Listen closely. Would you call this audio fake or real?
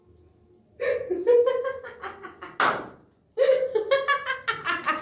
real